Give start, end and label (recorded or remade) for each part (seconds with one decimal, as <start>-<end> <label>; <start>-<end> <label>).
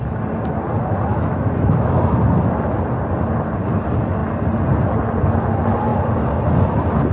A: 0.0-1.1 recorded; 1.1-1.9 remade; 1.9-7.1 recorded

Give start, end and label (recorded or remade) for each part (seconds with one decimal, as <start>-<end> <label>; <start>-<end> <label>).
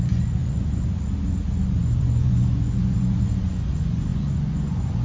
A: 0.0-5.0 remade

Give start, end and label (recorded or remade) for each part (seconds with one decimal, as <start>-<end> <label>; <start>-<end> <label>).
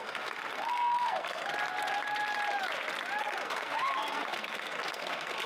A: 0.0-1.5 remade; 1.5-3.2 recorded; 3.2-5.5 remade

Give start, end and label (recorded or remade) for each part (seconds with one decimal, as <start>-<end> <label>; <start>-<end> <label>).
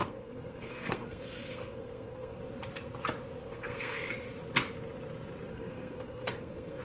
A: 0.0-2.4 remade; 2.4-3.4 recorded; 3.4-4.1 remade; 4.1-5.5 recorded; 5.5-6.8 remade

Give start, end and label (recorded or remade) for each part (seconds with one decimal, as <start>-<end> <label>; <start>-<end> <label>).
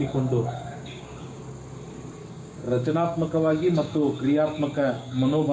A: 0.0-1.4 remade; 1.4-2.3 recorded; 2.3-4.0 remade; 4.0-4.8 recorded; 4.8-5.5 remade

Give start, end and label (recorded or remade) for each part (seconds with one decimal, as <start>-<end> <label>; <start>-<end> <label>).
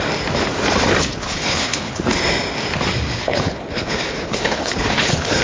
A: 0.0-1.0 recorded; 1.0-2.2 remade; 2.2-3.2 recorded; 3.2-5.4 remade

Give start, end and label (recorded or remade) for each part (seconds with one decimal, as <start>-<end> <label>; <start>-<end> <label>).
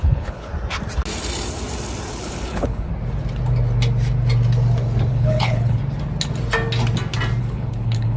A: 0.0-0.5 remade; 0.5-2.1 recorded; 2.1-2.9 remade; 2.9-5.1 recorded; 5.1-5.8 remade; 5.8-7.4 recorded; 7.4-8.2 remade